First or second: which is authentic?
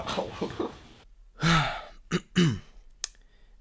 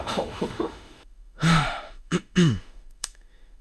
first